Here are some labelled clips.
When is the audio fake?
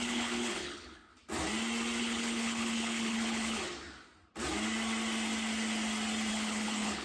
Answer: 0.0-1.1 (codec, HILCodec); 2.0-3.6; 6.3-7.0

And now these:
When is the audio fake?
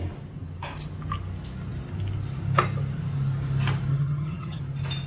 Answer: 3.9-4.6 (vocoder, HiFi-GAN)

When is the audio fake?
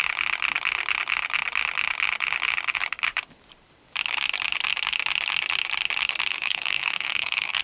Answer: 6.3-7.6 (codec, SNAC)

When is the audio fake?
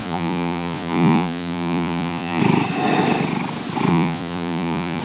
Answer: 0.0-2.4 (vocoder, Vocos); 3.9-5.0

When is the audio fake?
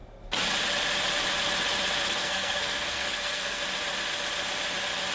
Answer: 2.2-3.6 (codec, SNAC)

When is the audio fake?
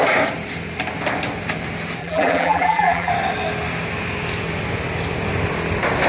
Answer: 2.0-3.1 (vocoder, BigVGAN v2)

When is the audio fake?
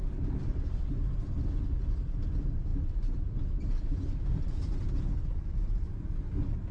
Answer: none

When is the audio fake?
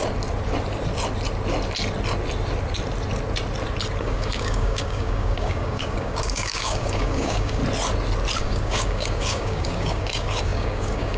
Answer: 4.0-7.6 (codec, DAC); 8.4-11.2